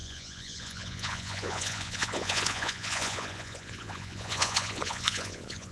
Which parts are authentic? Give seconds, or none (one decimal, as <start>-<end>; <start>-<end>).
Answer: none